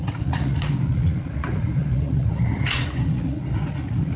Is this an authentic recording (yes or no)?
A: no